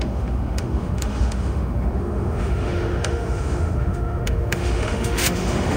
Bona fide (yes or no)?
no